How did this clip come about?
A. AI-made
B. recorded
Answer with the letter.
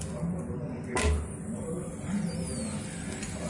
B